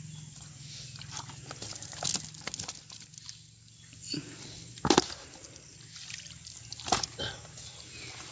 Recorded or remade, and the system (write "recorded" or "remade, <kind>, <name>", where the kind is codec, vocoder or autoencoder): recorded